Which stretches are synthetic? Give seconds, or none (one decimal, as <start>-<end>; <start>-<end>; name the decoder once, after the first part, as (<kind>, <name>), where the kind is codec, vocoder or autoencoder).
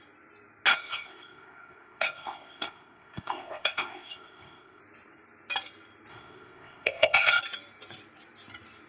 0.7-4.8 (codec, ZipCodec); 6.1-7.4